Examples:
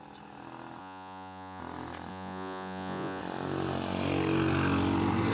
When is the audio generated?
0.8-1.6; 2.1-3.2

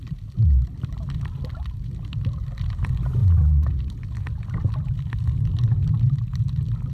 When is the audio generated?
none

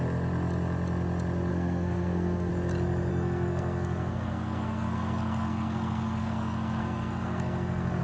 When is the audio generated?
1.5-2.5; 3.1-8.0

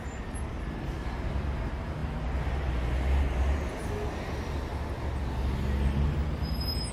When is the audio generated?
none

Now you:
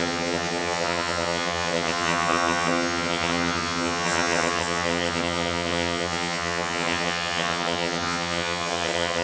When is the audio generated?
0.0-9.2